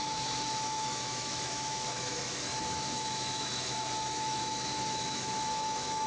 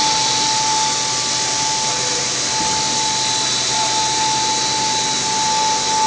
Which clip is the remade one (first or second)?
first